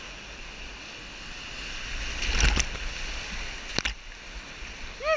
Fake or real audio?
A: real